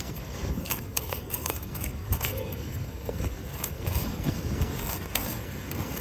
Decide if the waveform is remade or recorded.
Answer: remade